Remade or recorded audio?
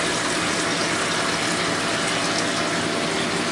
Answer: recorded